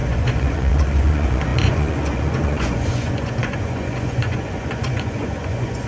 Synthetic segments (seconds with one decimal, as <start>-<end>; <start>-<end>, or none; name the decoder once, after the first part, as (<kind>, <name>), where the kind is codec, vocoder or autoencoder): 0.0-5.9 (vocoder, Vocos)